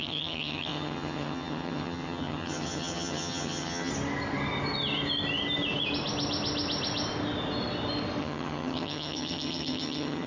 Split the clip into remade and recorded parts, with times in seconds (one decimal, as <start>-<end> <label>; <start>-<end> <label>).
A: 0.0-3.9 remade; 3.9-8.2 recorded; 8.2-10.3 remade